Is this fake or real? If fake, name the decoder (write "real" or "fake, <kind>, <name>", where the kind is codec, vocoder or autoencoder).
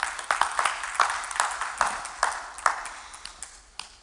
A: real